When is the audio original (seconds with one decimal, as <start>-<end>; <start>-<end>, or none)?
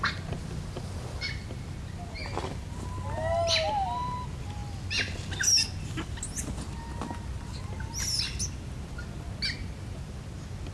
0.0-10.7